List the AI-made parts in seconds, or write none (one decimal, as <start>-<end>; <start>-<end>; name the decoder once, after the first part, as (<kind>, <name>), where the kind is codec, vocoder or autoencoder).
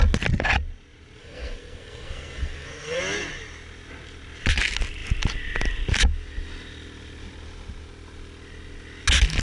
1.2-3.0 (codec, SNAC)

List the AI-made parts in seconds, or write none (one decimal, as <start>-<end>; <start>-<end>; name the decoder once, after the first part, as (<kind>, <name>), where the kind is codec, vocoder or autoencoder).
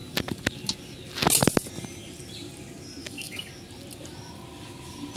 3.0-3.5 (codec, DAC)